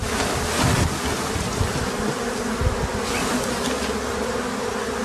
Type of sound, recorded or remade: recorded